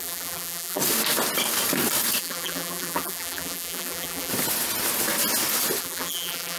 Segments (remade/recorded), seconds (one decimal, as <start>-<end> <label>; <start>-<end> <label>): 0.0-0.8 remade; 0.8-2.2 recorded; 2.2-4.3 remade; 4.3-5.8 recorded; 5.8-6.6 remade